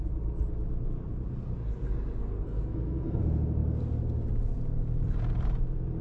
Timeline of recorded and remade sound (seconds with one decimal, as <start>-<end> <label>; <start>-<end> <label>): 0.0-2.2 recorded; 2.2-3.2 remade; 3.2-6.0 recorded